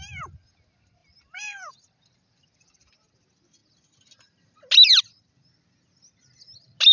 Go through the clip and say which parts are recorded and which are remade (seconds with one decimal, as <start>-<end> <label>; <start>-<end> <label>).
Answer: 0.0-1.0 recorded; 1.0-1.7 remade; 1.7-6.9 recorded